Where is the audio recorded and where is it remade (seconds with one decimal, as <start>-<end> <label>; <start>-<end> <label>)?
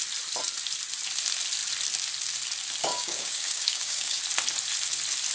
0.0-2.8 recorded; 2.8-4.2 remade; 4.2-5.3 recorded